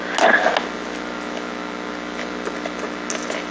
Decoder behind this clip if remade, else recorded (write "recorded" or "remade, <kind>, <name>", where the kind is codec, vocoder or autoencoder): recorded